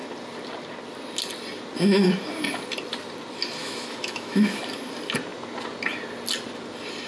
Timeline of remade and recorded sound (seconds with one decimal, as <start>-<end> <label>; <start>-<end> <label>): 0.0-3.6 recorded; 3.6-4.6 remade; 4.6-7.1 recorded